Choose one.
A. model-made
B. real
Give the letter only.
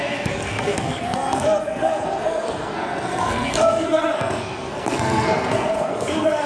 A